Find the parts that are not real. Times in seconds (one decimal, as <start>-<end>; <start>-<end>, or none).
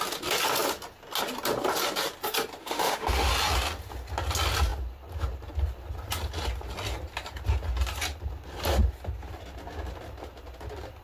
2.6-3.3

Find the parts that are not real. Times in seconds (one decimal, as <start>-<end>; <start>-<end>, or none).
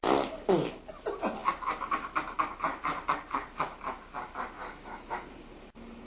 4.6-5.2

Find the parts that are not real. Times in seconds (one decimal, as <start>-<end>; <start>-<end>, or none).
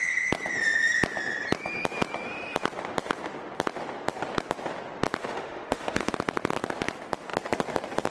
5.2-6.1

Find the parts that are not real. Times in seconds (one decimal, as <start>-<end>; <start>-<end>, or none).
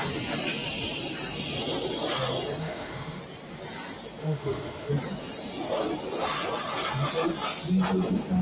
2.6-3.2; 4.2-4.9